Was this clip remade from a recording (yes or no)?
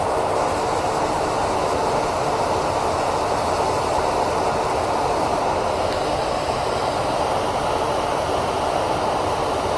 no